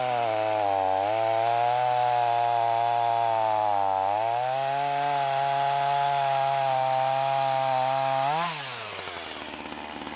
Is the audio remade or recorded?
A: recorded